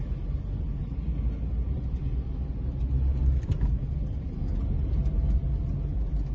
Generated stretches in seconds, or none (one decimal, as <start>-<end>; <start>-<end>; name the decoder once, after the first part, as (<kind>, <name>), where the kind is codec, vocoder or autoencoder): none